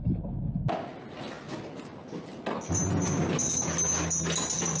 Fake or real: real